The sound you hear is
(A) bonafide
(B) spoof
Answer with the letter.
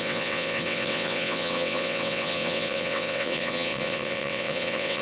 B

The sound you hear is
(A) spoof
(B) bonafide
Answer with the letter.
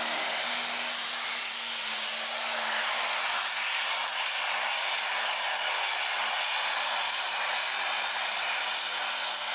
B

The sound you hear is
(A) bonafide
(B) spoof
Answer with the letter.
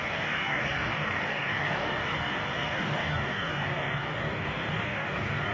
B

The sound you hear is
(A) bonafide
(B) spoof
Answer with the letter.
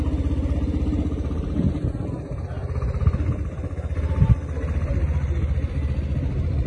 A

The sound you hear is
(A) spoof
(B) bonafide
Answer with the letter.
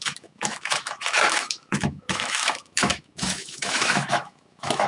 A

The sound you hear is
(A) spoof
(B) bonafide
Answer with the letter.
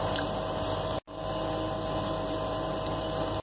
B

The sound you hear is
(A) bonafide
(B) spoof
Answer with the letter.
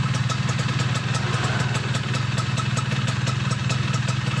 A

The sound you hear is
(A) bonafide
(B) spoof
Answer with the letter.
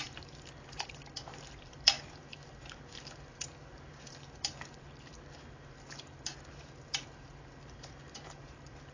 B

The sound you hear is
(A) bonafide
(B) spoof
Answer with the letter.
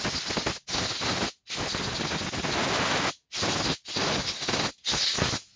A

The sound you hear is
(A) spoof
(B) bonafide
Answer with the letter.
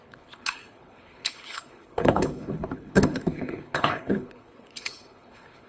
A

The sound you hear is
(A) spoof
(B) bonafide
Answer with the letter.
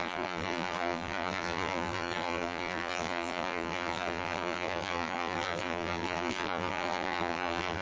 A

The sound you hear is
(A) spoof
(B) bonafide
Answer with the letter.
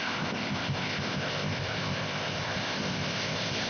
A